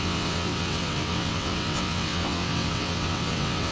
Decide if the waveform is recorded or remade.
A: remade